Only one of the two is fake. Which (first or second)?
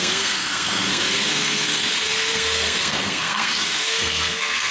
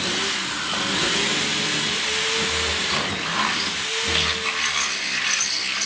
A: first